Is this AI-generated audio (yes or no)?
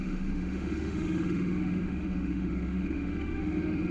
yes